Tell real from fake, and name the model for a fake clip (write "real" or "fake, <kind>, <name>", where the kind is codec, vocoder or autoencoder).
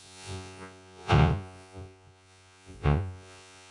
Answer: fake, vocoder, Vocos